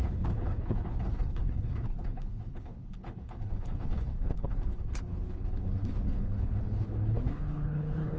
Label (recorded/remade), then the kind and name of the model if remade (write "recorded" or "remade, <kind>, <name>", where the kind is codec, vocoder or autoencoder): remade, codec, HILCodec